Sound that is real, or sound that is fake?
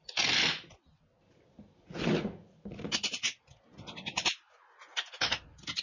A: real